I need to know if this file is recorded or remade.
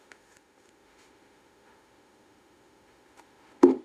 remade